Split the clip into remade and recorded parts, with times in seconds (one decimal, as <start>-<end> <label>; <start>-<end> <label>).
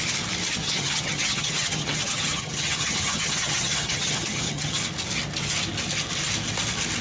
0.0-0.6 recorded; 0.6-4.8 remade; 4.8-7.0 recorded